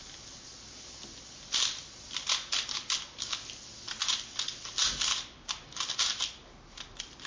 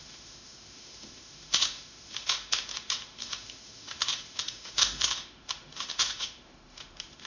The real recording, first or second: first